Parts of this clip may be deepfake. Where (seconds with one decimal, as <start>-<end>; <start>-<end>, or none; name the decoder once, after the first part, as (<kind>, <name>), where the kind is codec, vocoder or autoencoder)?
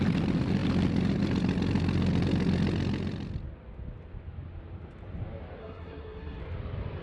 5.6-6.4 (codec, SNAC)